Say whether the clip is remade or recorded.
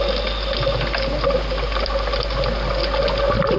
recorded